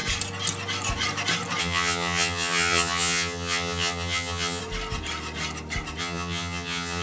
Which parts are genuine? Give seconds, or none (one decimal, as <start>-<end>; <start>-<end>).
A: 0.0-1.6; 4.6-6.0